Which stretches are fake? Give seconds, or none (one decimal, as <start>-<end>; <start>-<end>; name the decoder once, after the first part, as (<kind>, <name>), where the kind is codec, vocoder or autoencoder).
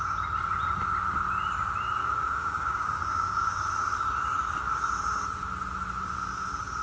2.0-3.6 (codec, DAC)